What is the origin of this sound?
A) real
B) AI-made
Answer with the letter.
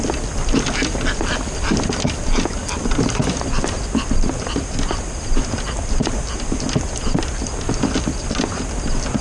A